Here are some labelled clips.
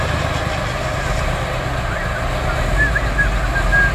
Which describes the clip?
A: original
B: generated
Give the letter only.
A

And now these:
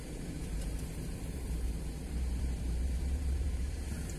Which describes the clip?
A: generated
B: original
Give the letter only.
A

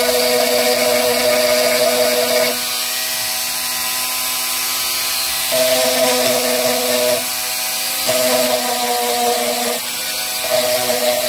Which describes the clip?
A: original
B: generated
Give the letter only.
A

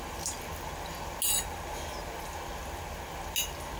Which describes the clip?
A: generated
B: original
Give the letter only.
B